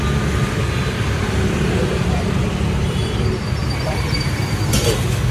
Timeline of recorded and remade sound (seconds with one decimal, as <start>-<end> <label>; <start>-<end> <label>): 0.0-1.2 recorded; 1.2-4.4 remade; 4.4-5.3 recorded